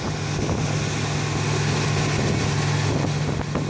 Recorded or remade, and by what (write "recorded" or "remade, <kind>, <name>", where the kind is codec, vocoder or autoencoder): recorded